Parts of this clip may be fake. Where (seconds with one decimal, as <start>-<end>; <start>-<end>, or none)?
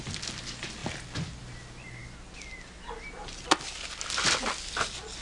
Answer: none